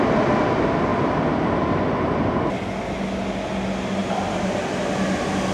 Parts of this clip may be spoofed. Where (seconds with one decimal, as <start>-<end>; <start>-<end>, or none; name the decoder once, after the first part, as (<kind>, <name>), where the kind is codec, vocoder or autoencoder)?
0.9-1.6 (vocoder, BigVGAN v2); 4.0-4.5